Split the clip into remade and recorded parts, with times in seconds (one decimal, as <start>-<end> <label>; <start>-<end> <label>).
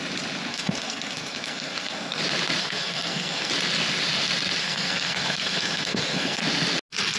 0.0-0.5 recorded; 0.5-2.2 remade; 2.2-2.6 recorded; 2.6-3.5 remade; 3.5-4.6 recorded; 4.6-6.4 remade; 6.4-7.2 recorded